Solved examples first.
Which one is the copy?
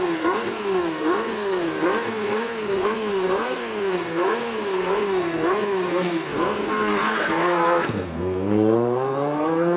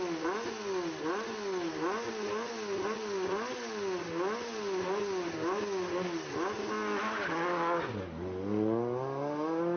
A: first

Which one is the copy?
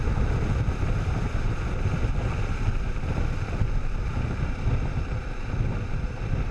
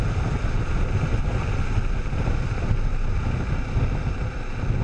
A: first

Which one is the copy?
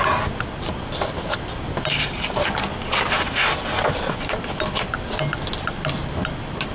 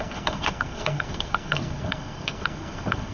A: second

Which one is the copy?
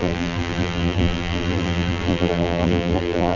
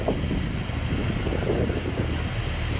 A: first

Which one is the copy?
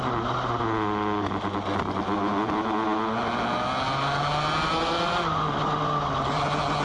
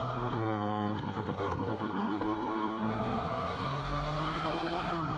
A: second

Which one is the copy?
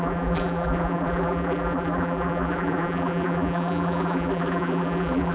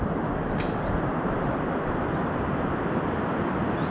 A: first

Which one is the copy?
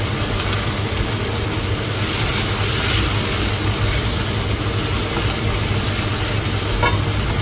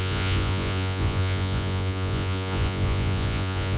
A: second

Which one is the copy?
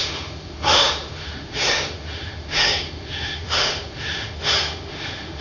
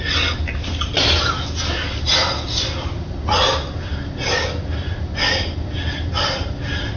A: first